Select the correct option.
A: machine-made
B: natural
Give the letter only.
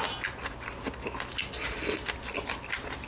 B